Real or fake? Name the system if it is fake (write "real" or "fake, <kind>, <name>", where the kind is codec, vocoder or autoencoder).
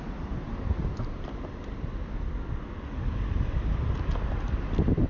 real